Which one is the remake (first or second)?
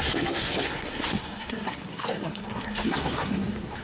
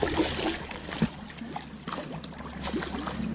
first